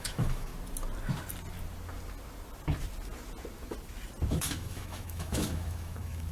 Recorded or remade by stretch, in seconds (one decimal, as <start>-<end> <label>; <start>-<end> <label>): 0.0-0.5 remade; 0.5-4.3 recorded; 4.3-6.3 remade